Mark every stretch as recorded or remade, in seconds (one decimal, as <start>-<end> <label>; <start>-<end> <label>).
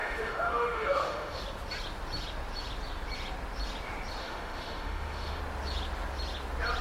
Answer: 0.0-1.4 remade; 1.4-4.2 recorded; 4.2-5.4 remade; 5.4-6.8 recorded